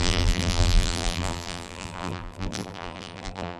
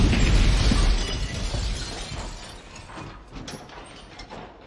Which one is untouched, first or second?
second